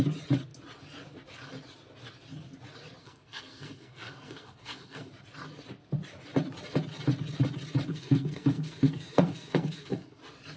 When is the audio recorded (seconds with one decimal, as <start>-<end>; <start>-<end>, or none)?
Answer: 0.0-3.0; 5.1-7.9; 10.2-10.6